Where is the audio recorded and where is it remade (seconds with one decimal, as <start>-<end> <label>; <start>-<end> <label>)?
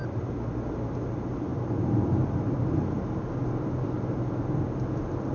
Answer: 0.0-5.3 recorded